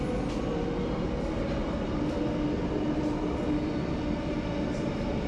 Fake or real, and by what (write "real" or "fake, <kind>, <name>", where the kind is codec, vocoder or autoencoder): real